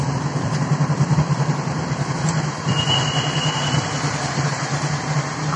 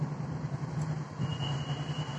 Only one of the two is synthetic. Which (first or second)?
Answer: first